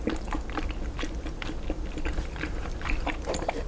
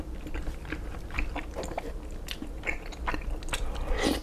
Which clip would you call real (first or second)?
second